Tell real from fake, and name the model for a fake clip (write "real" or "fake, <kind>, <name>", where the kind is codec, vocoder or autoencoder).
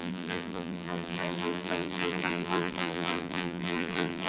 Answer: fake, vocoder, BigVGAN v2